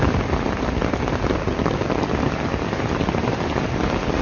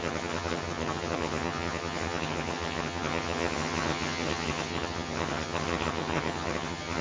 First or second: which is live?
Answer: first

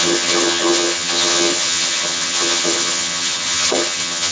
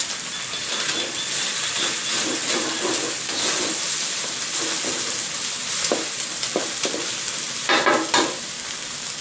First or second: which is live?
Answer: second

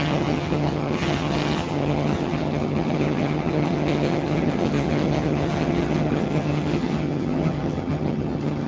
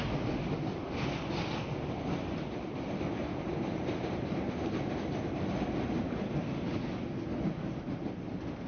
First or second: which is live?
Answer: second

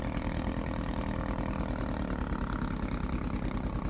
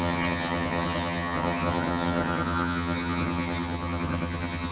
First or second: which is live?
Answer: first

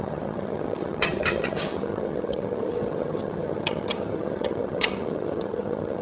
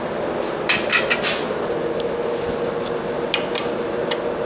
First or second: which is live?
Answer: second